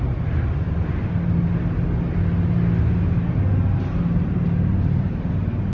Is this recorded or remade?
recorded